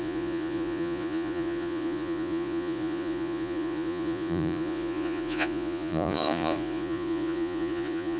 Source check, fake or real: fake